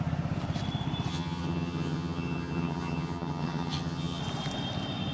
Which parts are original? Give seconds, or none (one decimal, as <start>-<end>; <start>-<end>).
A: 0.0-1.1; 4.2-5.1